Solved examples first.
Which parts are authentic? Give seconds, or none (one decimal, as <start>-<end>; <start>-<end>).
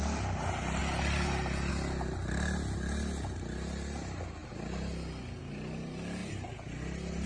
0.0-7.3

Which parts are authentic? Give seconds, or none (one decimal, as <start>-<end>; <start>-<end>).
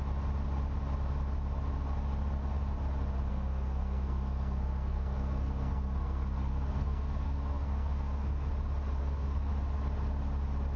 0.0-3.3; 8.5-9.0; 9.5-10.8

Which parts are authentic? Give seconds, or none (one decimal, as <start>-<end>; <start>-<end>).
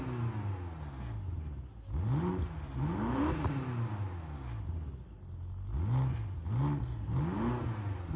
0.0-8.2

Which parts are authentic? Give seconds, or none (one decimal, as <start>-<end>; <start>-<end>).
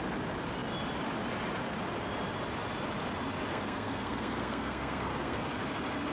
0.0-3.5; 5.4-6.1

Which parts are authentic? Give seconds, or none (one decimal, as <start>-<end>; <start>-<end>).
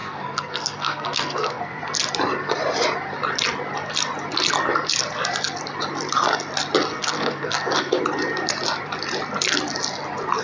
1.8-6.9; 8.0-10.4